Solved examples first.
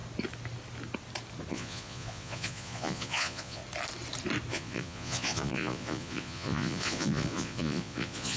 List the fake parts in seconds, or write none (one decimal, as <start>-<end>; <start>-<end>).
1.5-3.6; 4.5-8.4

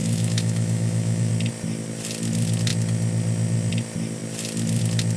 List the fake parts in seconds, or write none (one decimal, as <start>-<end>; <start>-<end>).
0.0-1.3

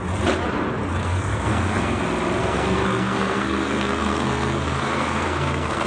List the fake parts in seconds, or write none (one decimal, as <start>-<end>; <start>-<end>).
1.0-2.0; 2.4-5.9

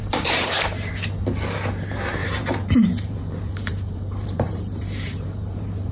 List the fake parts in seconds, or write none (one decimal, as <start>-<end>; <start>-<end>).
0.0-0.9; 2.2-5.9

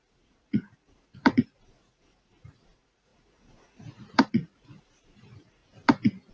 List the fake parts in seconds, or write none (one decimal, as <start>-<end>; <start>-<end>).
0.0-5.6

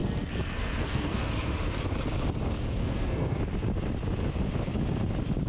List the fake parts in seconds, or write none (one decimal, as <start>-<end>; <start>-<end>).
0.0-1.3; 2.8-3.4

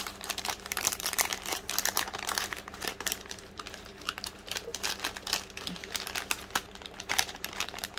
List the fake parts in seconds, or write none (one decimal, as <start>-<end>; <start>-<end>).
0.0-1.3; 2.2-4.7; 7.1-8.0

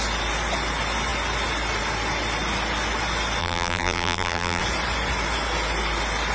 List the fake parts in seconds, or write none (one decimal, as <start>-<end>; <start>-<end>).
3.4-4.6